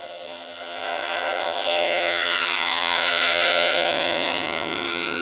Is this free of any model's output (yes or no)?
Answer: no